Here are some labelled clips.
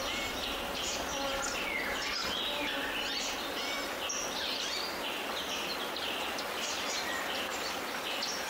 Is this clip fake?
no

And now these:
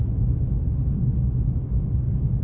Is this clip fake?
no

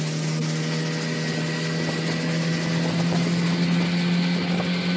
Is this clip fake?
no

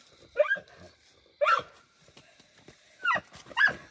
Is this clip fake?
no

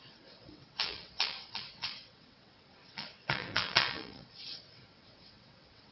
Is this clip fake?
yes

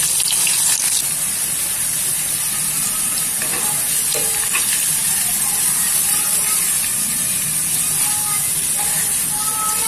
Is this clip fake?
no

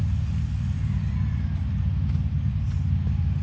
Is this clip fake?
no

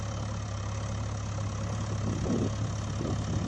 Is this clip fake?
no